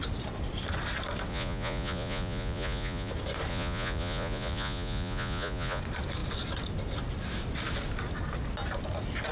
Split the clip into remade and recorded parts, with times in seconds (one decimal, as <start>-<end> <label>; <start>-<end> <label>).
0.0-1.3 recorded; 1.3-3.1 remade; 3.1-3.5 recorded; 3.5-5.8 remade; 5.8-9.3 recorded